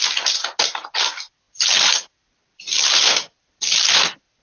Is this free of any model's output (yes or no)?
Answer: yes